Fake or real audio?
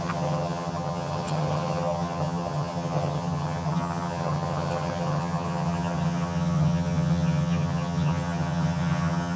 fake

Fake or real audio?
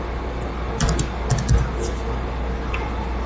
real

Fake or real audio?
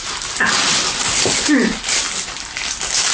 real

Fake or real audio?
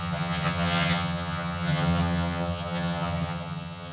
fake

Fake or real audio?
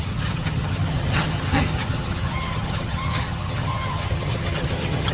fake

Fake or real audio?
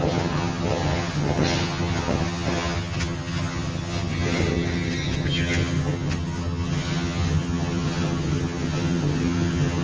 fake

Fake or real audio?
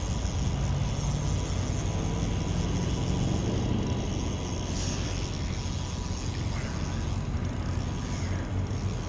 real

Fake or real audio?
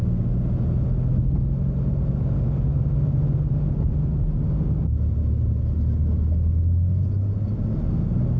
real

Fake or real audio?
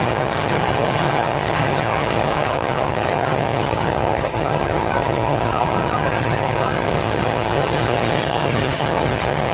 fake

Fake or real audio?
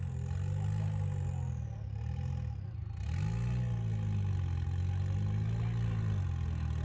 real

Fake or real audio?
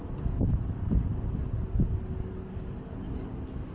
real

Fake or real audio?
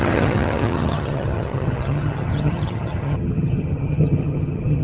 fake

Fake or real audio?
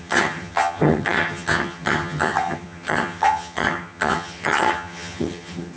fake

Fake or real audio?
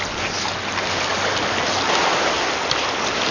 real